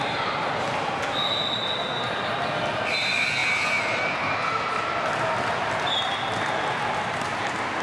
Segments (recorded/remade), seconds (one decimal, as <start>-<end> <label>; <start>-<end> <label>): 0.0-3.4 recorded; 3.4-6.0 remade; 6.0-7.8 recorded